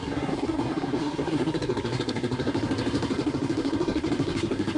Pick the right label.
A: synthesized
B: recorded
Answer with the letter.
A